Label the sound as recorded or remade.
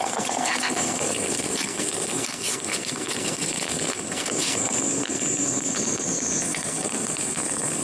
remade